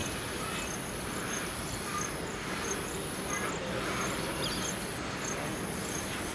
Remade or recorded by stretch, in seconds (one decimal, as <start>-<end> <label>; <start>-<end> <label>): 0.0-6.3 recorded